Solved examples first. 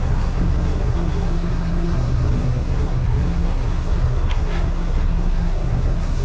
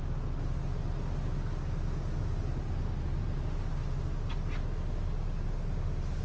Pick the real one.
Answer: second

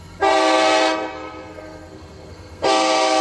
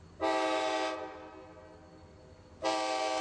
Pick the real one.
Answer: second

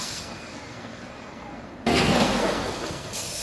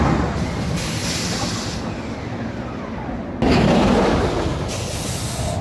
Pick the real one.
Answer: second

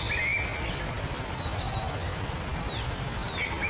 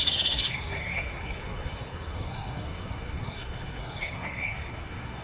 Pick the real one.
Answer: first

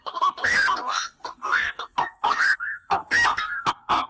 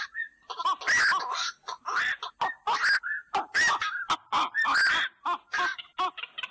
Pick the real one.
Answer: second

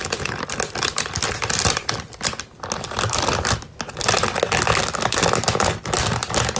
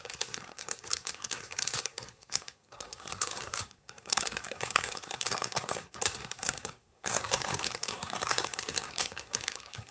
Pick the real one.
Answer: first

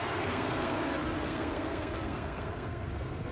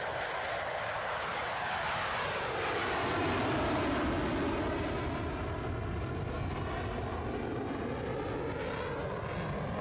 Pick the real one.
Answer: second